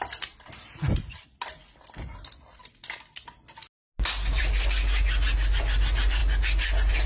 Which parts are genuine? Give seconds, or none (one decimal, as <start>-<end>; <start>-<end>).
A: 0.0-7.1